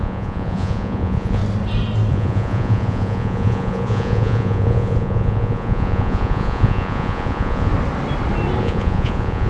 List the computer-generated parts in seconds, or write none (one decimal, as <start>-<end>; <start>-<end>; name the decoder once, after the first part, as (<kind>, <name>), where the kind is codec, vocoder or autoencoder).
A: 0.0-1.4 (vocoder, Vocos); 2.1-7.7; 8.6-9.5